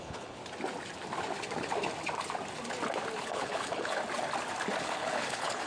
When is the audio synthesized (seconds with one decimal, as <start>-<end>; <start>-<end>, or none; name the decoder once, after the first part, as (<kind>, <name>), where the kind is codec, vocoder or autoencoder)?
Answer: 0.0-0.4 (codec, HILCodec); 3.2-4.0; 4.8-5.7